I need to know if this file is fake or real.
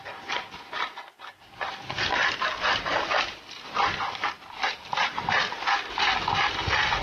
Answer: real